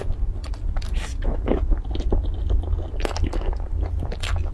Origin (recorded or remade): recorded